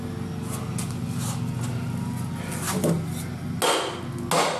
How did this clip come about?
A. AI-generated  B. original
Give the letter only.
B